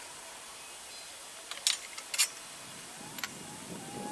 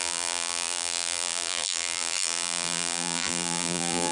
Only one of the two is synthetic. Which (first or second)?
second